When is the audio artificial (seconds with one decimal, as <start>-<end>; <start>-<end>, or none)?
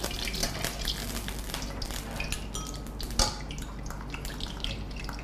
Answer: none